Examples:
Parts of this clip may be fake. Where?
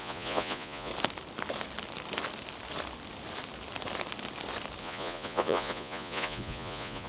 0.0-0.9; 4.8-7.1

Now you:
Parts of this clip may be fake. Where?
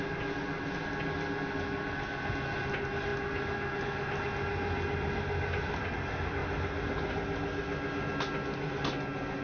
none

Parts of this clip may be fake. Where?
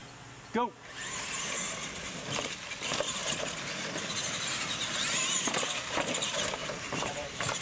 2.1-3.2; 4.1-7.6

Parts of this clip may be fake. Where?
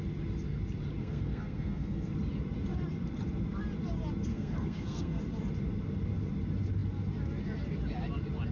1.0-2.1; 4.3-5.2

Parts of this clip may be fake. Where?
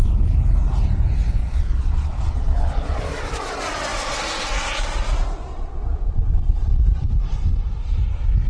1.4-3.0; 5.5-6.6